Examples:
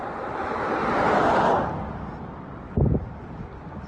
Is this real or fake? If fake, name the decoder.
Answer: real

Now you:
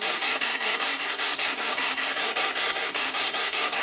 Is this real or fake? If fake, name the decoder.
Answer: fake, codec, SNAC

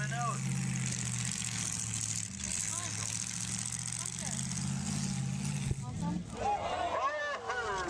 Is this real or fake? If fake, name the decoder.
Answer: real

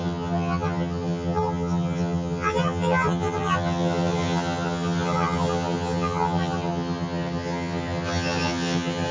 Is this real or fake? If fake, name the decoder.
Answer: fake, vocoder, HiFi-GAN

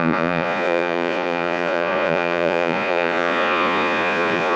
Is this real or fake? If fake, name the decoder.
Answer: fake, vocoder, Vocos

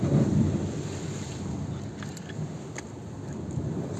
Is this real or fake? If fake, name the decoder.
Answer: real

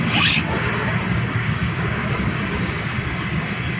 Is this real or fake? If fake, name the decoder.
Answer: fake, codec, DAC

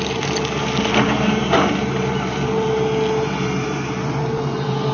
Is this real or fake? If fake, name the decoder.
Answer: real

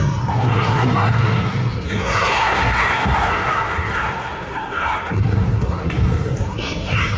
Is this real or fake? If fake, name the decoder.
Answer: fake, codec, SNAC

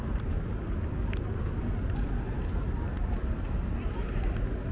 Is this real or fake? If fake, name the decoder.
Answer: real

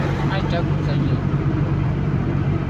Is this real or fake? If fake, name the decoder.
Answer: real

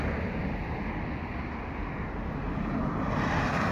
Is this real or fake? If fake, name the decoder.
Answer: real